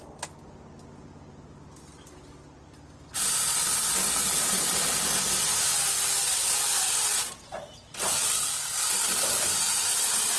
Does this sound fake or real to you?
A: real